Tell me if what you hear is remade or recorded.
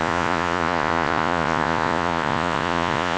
remade